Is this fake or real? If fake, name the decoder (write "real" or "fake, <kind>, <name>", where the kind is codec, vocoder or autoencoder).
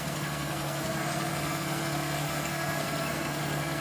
fake, codec, SNAC